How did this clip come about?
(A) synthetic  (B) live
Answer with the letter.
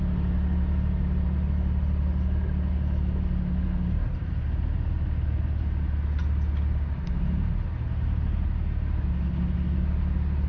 B